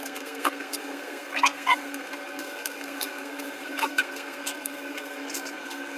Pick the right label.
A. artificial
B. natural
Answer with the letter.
A